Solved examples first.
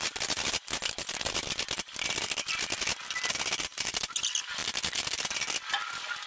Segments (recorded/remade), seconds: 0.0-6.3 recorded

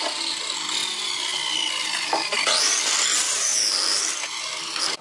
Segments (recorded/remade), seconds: 0.0-5.0 recorded

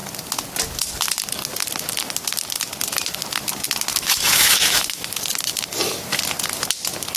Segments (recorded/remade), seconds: 0.0-3.9 recorded; 3.9-5.2 remade; 5.2-7.2 recorded